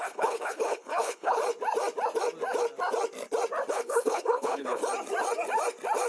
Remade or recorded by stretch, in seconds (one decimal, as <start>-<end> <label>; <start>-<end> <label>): 0.0-1.4 remade; 1.4-3.7 recorded; 3.7-4.8 remade; 4.8-6.1 recorded